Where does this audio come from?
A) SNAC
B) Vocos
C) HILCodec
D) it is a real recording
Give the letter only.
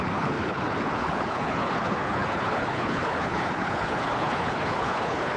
C